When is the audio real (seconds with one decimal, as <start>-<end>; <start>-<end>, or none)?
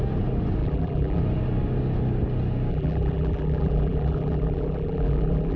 0.0-0.6; 1.2-2.7